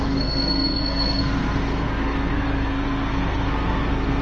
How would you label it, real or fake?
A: fake